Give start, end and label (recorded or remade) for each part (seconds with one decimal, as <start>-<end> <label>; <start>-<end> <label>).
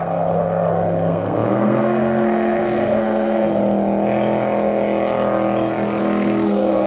0.0-3.6 remade; 3.6-6.0 recorded; 6.0-6.9 remade